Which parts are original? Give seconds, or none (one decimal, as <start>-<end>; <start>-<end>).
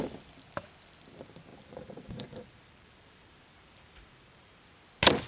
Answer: 0.0-1.5; 4.7-5.3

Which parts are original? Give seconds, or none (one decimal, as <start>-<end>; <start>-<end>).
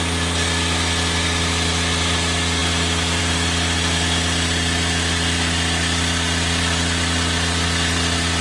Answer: 0.0-8.4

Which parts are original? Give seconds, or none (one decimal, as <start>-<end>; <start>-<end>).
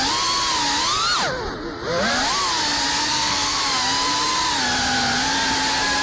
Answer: 0.0-3.1; 3.6-6.0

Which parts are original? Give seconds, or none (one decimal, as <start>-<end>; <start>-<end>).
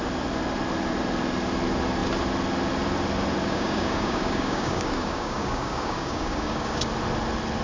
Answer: 0.0-3.4; 6.9-7.6